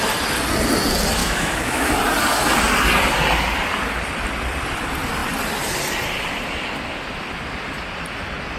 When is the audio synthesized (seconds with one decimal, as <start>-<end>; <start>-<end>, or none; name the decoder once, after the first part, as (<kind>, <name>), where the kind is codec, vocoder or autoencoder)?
1.2-1.9 (autoencoder, DAC-VAE)